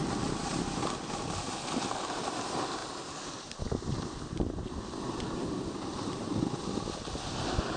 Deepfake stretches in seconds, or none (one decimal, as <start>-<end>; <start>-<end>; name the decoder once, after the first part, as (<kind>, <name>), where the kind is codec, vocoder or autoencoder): none